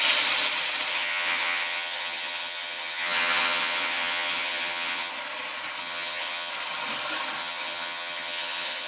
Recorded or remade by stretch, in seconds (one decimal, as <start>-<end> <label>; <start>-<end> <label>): 0.0-0.9 recorded; 0.9-5.1 remade; 5.1-5.8 recorded; 5.8-6.5 remade; 6.5-7.4 recorded; 7.4-8.9 remade